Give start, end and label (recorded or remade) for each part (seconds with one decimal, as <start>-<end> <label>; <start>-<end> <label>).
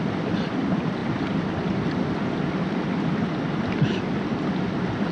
0.0-5.1 recorded